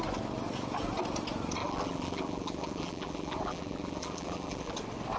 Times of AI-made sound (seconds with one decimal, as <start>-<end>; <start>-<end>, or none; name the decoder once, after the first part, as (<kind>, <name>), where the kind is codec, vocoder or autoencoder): 1.6-4.7 (vocoder, BigVGAN v2)